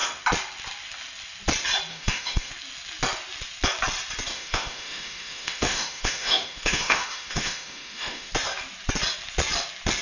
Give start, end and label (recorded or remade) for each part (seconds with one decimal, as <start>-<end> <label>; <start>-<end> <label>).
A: 0.0-1.9 recorded; 1.9-2.5 remade; 2.5-4.3 recorded; 4.3-8.3 remade; 8.3-10.0 recorded